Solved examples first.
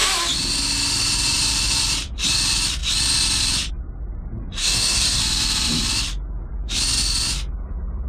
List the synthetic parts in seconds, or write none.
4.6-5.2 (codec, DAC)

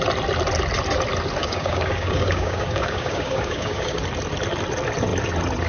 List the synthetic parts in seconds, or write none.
1.4-4.0 (codec, DAC)

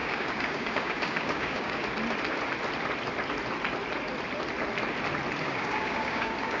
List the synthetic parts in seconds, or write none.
0.0-1.8 (codec, DAC); 5.4-6.6

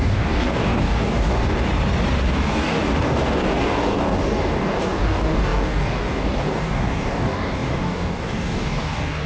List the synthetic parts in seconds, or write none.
0.0-1.7 (codec, DAC); 2.3-9.3